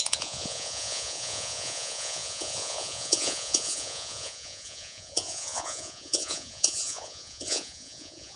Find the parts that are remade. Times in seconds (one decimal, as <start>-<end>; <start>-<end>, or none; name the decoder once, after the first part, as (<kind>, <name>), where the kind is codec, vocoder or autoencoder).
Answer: 0.0-8.4 (vocoder, Vocos)

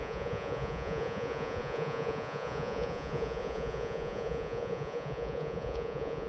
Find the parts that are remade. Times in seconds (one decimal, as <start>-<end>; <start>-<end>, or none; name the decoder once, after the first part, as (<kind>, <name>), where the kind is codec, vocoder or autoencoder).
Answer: 0.0-6.3 (vocoder, Vocos)

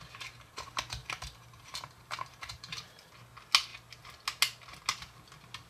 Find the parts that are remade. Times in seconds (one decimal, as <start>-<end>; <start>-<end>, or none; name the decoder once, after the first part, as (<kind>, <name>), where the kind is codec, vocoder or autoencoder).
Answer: 1.0-3.1 (vocoder, BigVGAN v2)

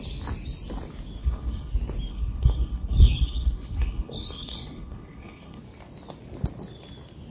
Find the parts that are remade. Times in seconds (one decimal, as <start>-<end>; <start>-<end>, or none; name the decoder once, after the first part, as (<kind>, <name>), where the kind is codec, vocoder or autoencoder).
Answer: 1.2-1.7 (codec, HILCodec); 2.1-5.6

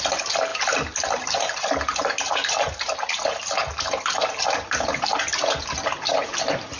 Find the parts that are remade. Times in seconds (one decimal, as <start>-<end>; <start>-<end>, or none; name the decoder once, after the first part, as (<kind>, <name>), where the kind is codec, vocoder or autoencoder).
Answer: none